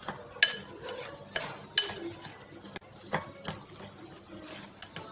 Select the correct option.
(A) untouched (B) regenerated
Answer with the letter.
A